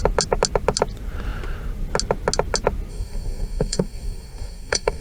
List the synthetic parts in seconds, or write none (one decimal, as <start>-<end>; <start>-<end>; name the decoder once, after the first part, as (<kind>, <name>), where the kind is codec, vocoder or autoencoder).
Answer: 2.9-5.0 (codec, DAC)